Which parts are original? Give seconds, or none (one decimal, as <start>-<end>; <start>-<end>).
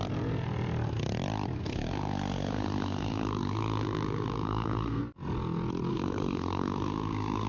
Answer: 0.0-1.6; 5.0-5.9